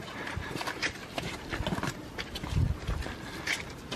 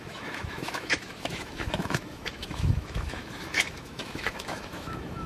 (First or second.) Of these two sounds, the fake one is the second